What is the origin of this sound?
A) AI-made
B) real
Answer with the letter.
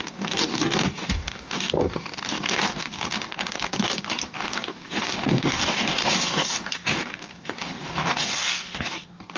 A